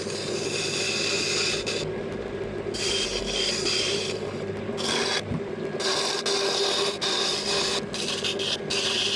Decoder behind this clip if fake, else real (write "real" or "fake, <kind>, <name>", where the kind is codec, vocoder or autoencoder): real